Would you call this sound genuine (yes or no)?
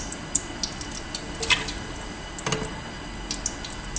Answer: yes